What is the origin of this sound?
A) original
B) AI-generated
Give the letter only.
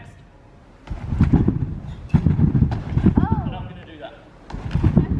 A